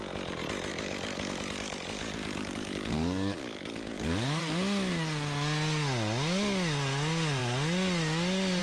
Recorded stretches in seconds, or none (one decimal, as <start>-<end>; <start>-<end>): 0.0-0.7; 4.4-8.6